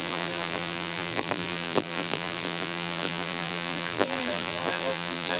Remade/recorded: remade